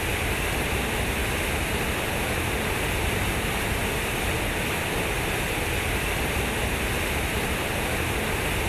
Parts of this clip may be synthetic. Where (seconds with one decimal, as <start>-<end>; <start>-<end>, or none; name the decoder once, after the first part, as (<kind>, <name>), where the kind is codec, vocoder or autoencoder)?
none